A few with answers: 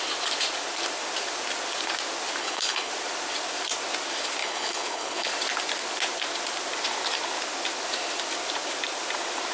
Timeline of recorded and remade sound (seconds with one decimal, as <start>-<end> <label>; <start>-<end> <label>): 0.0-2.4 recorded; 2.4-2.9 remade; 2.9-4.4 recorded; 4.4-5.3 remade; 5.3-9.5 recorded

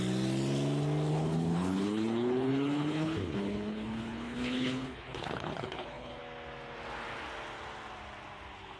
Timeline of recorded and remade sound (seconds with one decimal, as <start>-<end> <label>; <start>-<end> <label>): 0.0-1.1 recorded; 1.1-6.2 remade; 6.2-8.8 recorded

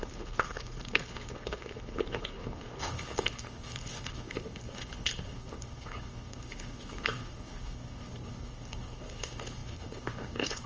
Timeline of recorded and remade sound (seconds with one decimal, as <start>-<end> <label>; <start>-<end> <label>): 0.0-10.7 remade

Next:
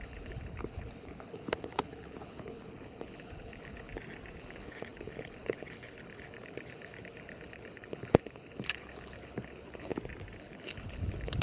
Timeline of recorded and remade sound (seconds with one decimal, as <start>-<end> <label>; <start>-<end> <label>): 0.0-3.9 remade; 3.9-4.4 recorded; 4.4-9.9 remade; 9.9-10.4 recorded; 10.4-11.4 remade

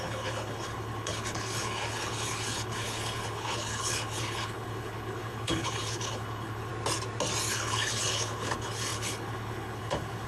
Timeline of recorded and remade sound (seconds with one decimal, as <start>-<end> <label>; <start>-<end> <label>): 0.0-6.7 remade; 6.7-7.5 recorded; 7.5-10.3 remade

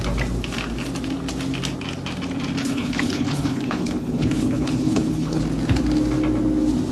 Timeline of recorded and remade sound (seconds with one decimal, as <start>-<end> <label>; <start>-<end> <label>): 0.0-2.6 recorded; 2.6-5.4 remade; 5.4-6.9 recorded

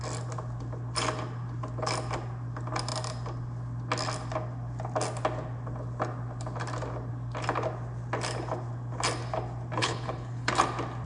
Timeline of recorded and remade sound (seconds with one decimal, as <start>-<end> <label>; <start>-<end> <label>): 0.0-9.8 recorded; 9.8-10.5 remade; 10.5-11.1 recorded